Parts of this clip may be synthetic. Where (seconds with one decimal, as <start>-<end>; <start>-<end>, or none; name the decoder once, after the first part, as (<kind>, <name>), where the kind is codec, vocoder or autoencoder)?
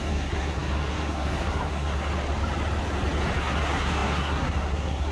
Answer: 0.0-2.1 (codec, SNAC); 3.4-5.1